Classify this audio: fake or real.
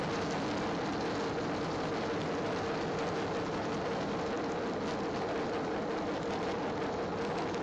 real